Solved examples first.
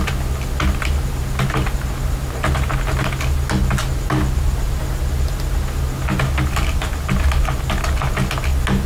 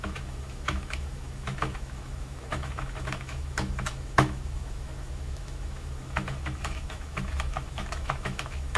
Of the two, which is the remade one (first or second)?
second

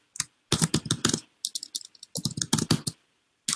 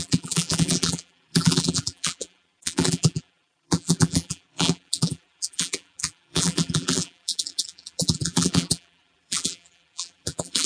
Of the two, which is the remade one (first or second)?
second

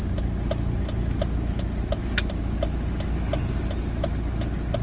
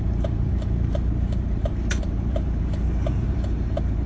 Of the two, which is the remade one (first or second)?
second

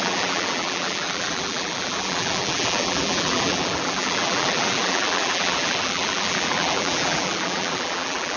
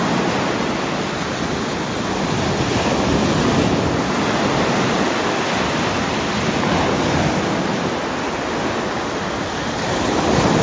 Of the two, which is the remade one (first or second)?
first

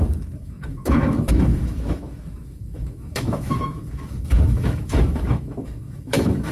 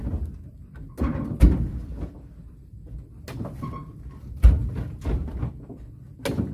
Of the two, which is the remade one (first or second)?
first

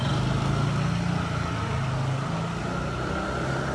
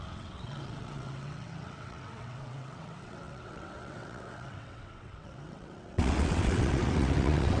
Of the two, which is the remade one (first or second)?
second